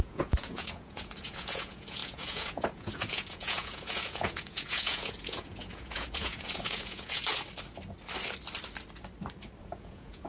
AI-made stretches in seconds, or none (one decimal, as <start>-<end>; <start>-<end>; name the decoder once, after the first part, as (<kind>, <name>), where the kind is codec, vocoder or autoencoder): 0.0-7.3 (vocoder, Vocos); 9.6-10.3